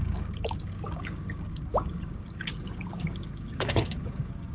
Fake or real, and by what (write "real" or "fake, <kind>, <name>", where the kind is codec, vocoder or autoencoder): fake, codec, DAC